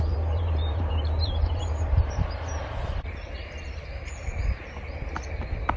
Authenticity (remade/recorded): remade